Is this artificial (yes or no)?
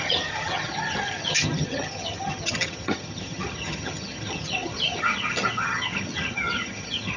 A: yes